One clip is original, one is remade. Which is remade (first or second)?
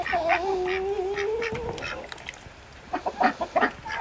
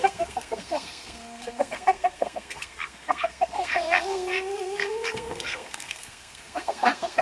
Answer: second